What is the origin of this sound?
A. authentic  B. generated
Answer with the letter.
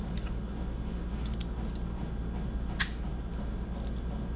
A